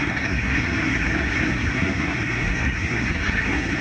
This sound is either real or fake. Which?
fake